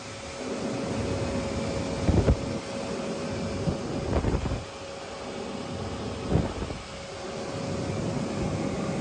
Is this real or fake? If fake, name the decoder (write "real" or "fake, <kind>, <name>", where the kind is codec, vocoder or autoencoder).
real